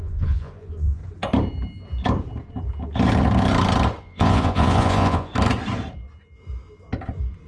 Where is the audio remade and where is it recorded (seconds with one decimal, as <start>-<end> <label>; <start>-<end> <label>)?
0.0-1.0 remade; 1.0-4.0 recorded; 4.0-5.3 remade; 5.3-7.5 recorded